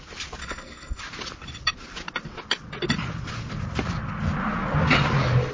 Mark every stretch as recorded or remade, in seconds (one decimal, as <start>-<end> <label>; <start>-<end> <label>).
0.0-0.4 recorded; 0.4-1.0 remade; 1.0-5.5 recorded